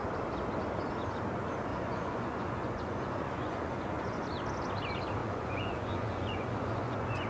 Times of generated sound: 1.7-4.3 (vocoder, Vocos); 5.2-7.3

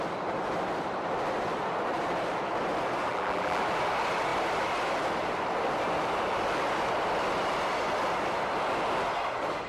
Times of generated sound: 3.1-3.6 (vocoder, BigVGAN v2)